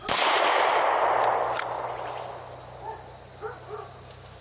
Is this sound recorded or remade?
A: recorded